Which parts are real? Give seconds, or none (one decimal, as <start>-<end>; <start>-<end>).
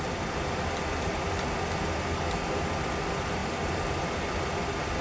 0.0-5.0